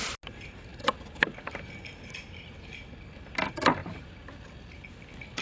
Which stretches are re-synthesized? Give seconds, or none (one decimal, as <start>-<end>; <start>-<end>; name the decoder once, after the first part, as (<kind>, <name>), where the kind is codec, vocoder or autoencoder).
none